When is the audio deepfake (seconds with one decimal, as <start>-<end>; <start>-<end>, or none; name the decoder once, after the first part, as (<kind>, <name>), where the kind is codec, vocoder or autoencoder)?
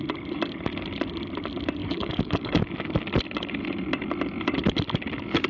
1.8-2.6 (codec, DAC)